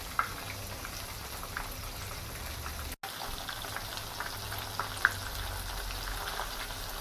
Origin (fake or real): real